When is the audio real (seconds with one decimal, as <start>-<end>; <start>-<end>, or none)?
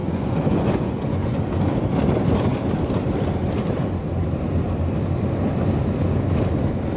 1.4-7.0